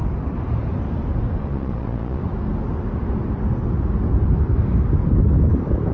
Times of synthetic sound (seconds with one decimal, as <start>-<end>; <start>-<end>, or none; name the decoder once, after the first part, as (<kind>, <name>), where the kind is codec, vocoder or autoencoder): 1.4-2.2 (vocoder, Vocos)